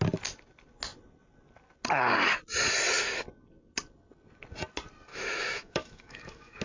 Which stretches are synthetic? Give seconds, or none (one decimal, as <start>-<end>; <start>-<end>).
5.1-6.6

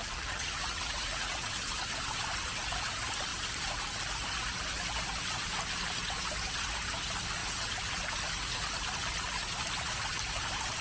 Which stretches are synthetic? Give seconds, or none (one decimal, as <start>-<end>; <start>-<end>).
0.0-1.5

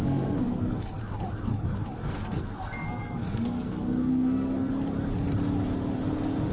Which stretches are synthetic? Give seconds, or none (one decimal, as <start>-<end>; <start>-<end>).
0.0-1.0; 2.0-4.7